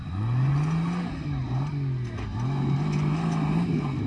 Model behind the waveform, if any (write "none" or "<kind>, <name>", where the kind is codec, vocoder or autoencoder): none